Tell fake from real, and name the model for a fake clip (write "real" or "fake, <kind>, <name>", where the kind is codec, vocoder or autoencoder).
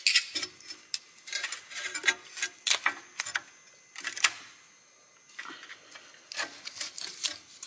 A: real